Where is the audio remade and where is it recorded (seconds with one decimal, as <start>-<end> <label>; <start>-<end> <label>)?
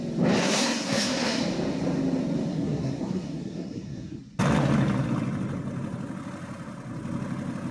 0.0-0.4 recorded; 0.4-1.4 remade; 1.4-2.5 recorded; 2.5-4.2 remade; 4.2-7.7 recorded